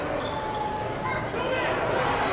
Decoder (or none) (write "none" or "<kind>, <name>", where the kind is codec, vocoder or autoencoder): none